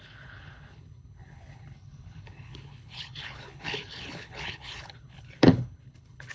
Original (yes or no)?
no